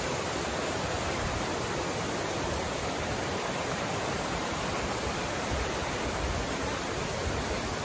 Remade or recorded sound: remade